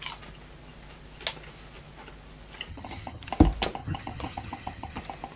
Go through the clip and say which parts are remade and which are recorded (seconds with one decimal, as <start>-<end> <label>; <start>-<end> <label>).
0.0-2.7 recorded; 2.7-3.3 remade; 3.3-3.8 recorded; 3.8-5.0 remade; 5.0-5.4 recorded